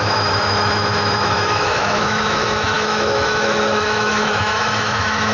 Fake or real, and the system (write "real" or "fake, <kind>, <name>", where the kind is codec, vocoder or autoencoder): fake, autoencoder, DAC-VAE